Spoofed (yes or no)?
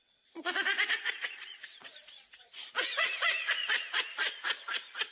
yes